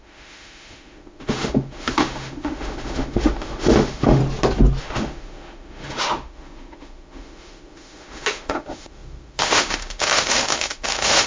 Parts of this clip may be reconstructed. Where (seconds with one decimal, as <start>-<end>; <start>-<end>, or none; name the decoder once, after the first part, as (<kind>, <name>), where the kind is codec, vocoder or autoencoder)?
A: 0.0-4.2 (autoencoder, DAC-VAE); 4.8-11.3